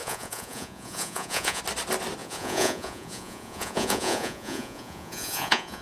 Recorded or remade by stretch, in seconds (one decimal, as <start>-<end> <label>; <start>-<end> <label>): 0.0-1.6 remade; 1.6-2.2 recorded; 2.2-5.8 remade